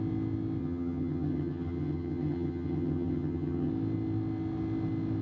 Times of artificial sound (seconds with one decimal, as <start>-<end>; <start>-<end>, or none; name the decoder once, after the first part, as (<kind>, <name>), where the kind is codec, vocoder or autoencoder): 0.6-3.7 (vocoder, HiFi-GAN)